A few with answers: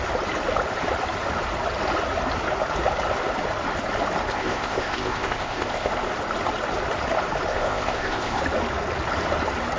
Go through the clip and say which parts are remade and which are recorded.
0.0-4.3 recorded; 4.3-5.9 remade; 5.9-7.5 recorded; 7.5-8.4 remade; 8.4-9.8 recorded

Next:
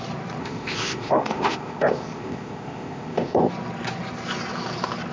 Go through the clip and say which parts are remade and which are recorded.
0.0-0.4 recorded; 0.4-3.5 remade; 3.5-5.1 recorded

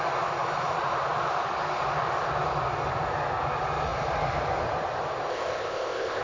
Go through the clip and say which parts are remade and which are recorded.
0.0-5.3 recorded; 5.3-6.2 remade